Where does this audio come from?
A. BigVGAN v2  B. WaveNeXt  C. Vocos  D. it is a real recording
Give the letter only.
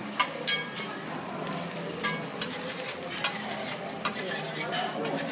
D